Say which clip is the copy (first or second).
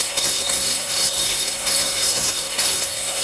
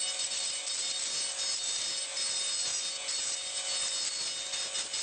first